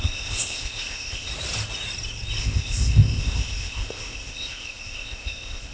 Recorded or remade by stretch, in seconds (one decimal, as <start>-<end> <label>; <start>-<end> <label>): 0.0-1.3 remade; 1.3-2.4 recorded; 2.4-5.7 remade